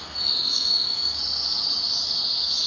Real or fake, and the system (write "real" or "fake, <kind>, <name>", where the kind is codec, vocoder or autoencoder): fake, autoencoder, DAC-VAE